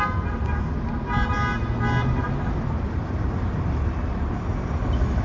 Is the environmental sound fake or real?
real